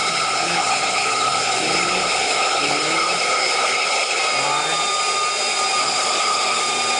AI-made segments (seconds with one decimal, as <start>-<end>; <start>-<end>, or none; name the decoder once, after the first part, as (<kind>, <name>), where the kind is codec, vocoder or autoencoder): 0.0-4.2 (codec, HILCodec); 5.8-6.6